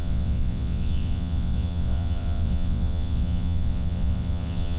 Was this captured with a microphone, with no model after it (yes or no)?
no